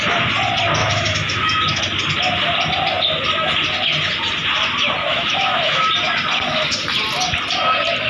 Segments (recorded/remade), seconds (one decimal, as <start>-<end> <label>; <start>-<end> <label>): 0.0-0.8 recorded; 0.8-1.8 remade; 1.8-5.1 recorded; 5.1-5.9 remade; 5.9-8.1 recorded